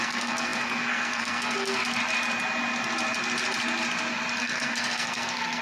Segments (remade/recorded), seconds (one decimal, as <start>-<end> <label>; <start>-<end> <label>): 0.0-1.8 remade; 1.8-4.4 recorded; 4.4-5.6 remade